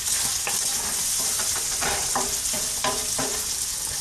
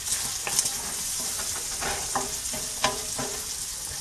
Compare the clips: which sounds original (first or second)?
second